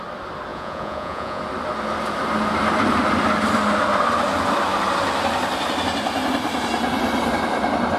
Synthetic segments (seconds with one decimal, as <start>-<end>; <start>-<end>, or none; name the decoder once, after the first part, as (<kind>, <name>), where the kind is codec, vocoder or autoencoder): 0.5-1.4 (vocoder, Vocos)